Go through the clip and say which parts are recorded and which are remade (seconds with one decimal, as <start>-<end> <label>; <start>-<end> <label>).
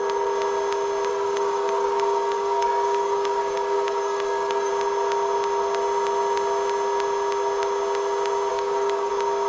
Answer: 0.0-1.1 recorded; 1.1-4.7 remade; 4.7-8.5 recorded; 8.5-9.1 remade; 9.1-9.5 recorded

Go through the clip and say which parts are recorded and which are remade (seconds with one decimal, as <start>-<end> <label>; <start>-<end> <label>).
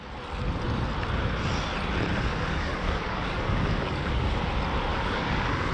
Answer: 0.0-2.1 recorded; 2.1-4.4 remade; 4.4-4.9 recorded; 4.9-5.7 remade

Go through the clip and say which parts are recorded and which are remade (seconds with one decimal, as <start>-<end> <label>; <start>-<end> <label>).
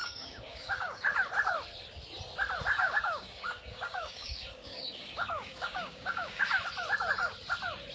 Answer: 0.0-1.0 remade; 1.0-2.8 recorded; 2.8-6.4 remade; 6.4-7.9 recorded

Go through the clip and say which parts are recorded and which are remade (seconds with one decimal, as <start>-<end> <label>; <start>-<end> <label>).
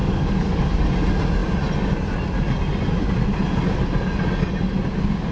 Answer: 0.0-0.6 remade; 0.6-5.3 recorded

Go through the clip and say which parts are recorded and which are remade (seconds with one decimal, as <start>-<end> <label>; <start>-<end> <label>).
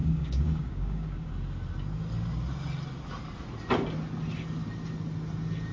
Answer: 0.0-1.3 remade; 1.3-5.7 recorded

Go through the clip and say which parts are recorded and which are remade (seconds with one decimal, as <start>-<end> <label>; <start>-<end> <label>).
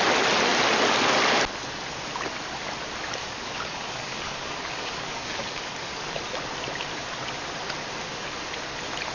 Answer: 0.0-3.2 recorded; 3.2-6.2 remade; 6.2-9.1 recorded